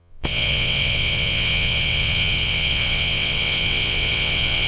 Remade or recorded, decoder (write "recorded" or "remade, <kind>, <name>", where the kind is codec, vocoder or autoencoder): remade, vocoder, WaveNeXt